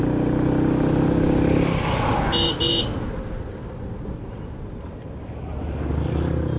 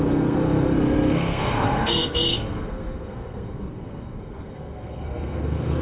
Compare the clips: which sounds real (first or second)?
first